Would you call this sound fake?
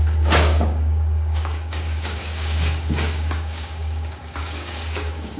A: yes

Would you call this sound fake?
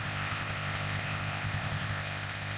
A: yes